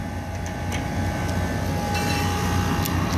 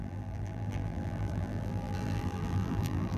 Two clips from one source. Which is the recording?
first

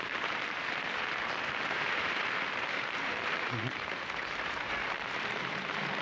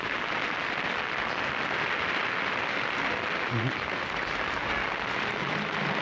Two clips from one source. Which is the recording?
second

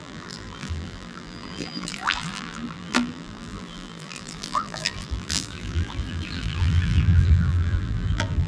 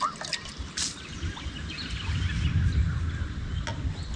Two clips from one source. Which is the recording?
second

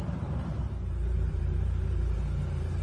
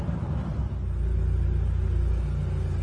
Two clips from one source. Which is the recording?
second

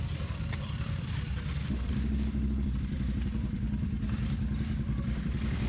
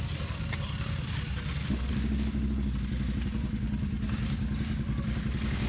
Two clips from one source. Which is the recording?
second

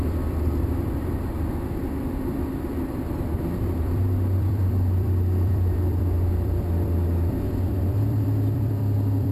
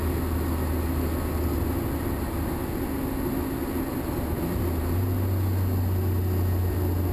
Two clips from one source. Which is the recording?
second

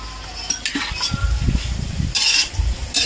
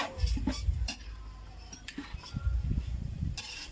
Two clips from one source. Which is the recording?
first